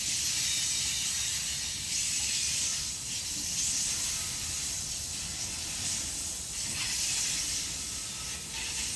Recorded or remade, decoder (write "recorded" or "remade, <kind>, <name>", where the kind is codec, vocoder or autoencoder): recorded